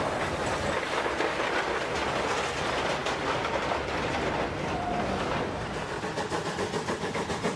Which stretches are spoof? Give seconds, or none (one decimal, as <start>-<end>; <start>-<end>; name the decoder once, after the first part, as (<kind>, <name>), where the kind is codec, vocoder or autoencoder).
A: none